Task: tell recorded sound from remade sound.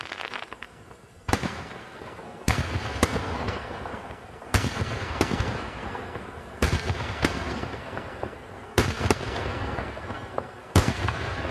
remade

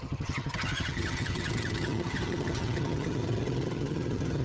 remade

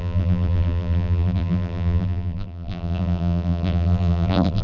remade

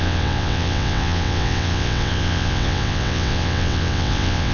remade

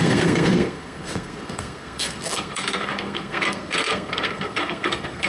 remade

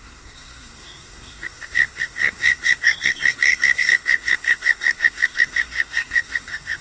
remade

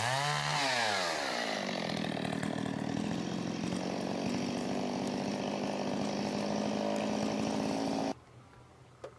recorded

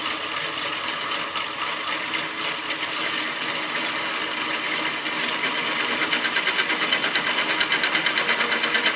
recorded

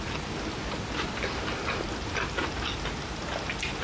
recorded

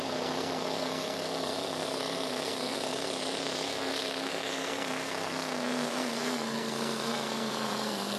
remade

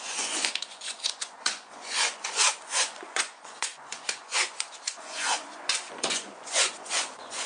remade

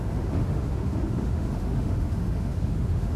remade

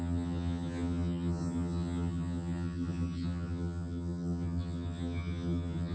remade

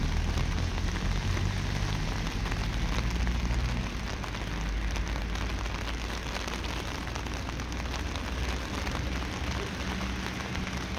recorded